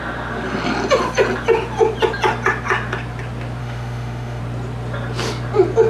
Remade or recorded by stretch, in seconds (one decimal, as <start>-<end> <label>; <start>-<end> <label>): 0.0-3.6 recorded; 3.6-4.4 remade; 4.4-5.9 recorded